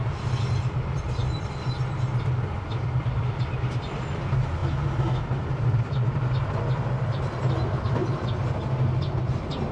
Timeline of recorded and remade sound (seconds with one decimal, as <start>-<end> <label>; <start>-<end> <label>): 0.0-9.7 recorded